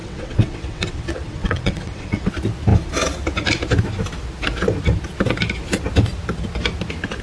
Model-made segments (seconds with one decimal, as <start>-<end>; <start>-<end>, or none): 0.0-2.3